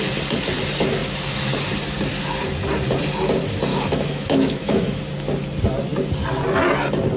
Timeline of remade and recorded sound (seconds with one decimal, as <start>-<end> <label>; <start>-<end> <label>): 0.0-3.7 recorded; 3.7-5.0 remade; 5.0-7.2 recorded